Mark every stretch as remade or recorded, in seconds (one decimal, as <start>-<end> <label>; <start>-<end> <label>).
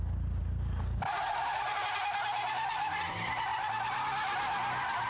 0.0-5.1 recorded